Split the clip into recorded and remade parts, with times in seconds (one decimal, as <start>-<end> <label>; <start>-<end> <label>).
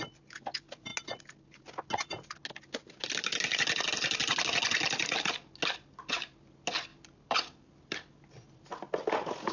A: 0.0-6.9 recorded; 6.9-8.2 remade; 8.2-9.5 recorded